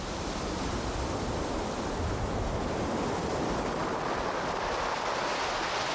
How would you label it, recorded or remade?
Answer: recorded